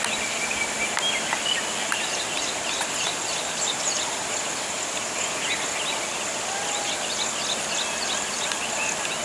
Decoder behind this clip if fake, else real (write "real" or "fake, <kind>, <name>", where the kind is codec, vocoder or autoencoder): real